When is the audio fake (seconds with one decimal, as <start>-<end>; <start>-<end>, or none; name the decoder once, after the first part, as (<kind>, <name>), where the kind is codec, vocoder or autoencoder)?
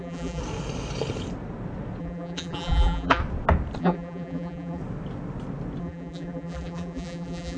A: 0.0-0.4 (vocoder, BigVGAN v2); 2.0-3.2; 3.8-4.8; 5.8-7.6